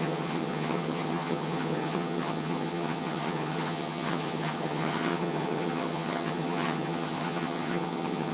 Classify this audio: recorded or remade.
remade